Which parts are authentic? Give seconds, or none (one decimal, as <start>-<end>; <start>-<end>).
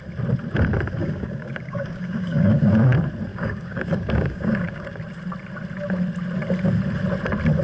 0.0-1.0; 2.7-3.3; 5.0-7.6